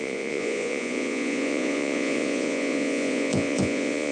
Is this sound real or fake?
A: fake